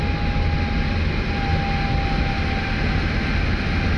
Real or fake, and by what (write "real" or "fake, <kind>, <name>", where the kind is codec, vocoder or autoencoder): real